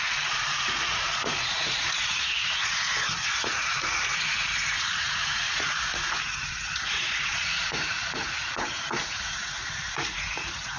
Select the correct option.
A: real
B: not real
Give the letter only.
B